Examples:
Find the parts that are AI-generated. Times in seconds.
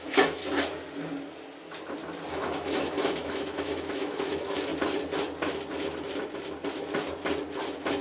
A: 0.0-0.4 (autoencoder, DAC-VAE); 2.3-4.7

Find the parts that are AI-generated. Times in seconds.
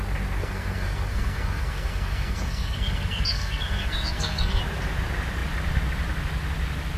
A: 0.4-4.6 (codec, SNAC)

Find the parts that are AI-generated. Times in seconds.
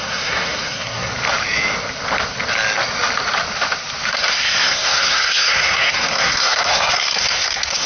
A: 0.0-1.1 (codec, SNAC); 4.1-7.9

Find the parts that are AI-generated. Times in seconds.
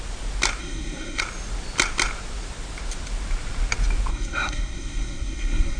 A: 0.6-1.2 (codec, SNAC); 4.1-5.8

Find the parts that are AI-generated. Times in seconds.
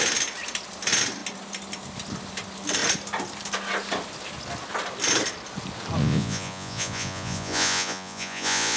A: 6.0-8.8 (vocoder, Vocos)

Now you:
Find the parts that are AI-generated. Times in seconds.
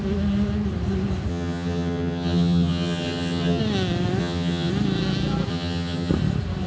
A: 1.3-3.6 (vocoder, HiFi-GAN); 4.2-4.7; 5.5-6.1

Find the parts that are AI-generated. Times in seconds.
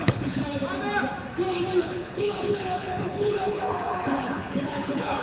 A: 0.0-0.4 (codec, HILCodec); 1.8-5.2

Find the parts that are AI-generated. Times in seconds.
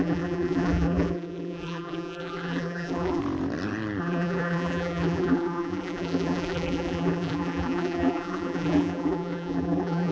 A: 0.0-3.2 (vocoder, BigVGAN v2); 4.0-10.1